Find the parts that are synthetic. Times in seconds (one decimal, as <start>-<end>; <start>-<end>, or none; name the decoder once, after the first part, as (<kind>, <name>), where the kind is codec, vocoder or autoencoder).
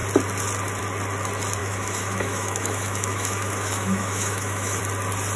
1.6-4.8 (autoencoder, DAC-VAE)